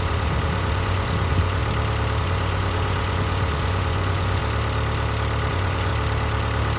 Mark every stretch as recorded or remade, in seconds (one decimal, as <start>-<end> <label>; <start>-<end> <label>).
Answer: 0.0-1.6 remade; 1.6-2.2 recorded; 2.2-4.4 remade; 4.4-5.5 recorded; 5.5-5.9 remade; 5.9-6.8 recorded